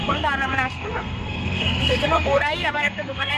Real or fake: fake